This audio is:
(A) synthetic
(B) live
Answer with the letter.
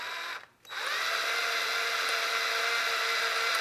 B